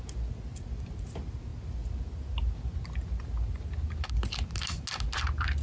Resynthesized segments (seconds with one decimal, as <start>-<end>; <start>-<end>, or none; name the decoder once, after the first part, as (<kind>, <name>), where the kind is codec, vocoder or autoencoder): none